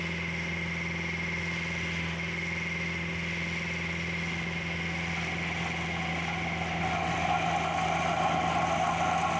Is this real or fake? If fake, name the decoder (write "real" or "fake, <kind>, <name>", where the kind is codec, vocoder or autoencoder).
real